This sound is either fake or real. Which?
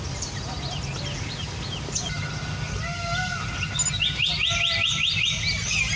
real